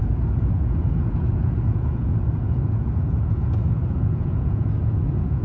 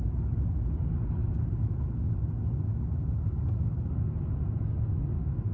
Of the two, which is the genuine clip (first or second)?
second